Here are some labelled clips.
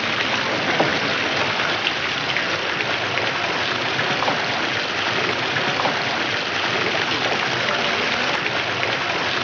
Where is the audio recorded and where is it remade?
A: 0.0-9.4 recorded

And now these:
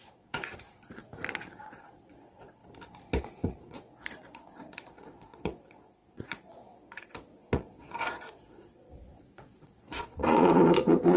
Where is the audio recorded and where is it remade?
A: 0.0-1.0 remade; 1.0-1.6 recorded; 1.6-2.6 remade; 2.6-3.2 recorded; 3.2-11.2 remade

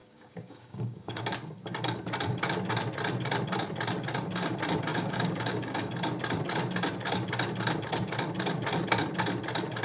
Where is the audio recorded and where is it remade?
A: 0.0-1.2 remade; 1.2-4.9 recorded; 4.9-5.9 remade; 5.9-9.8 recorded

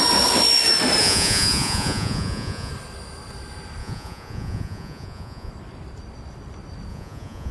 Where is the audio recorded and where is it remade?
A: 0.0-1.0 recorded; 1.0-2.7 remade; 2.7-3.8 recorded; 3.8-5.5 remade; 5.5-6.9 recorded; 6.9-7.5 remade

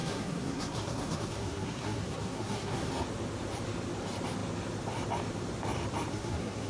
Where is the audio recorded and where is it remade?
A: 0.0-2.9 remade; 2.9-6.1 recorded; 6.1-6.7 remade